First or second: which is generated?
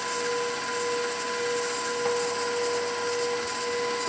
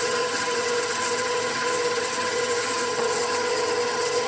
second